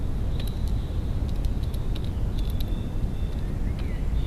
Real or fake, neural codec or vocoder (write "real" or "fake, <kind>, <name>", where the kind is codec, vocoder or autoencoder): real